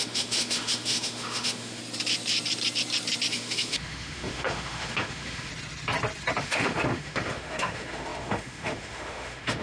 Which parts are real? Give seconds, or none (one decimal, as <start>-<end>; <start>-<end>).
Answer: 1.8-3.3; 5.5-6.4